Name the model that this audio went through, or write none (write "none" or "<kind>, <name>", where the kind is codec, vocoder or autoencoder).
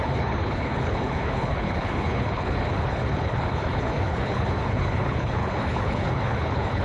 codec, HILCodec